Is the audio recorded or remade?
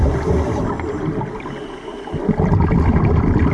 recorded